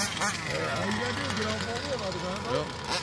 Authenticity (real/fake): real